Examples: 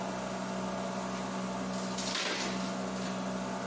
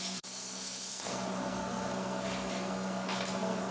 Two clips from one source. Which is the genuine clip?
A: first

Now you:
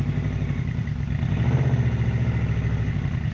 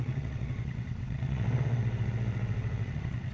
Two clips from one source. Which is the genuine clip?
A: first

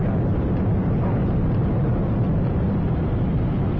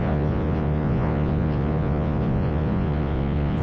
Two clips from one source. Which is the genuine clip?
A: first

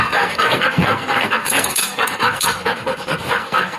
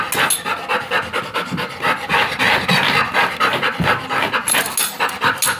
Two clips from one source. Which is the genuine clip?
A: second